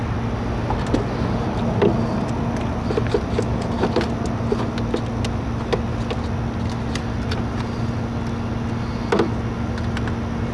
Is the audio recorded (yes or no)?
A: yes